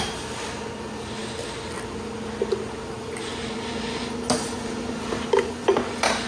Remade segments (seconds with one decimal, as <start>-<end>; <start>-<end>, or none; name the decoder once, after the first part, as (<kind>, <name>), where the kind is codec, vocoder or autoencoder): none

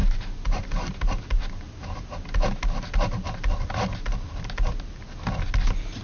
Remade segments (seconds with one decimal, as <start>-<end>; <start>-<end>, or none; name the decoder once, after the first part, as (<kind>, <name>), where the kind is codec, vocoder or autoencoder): none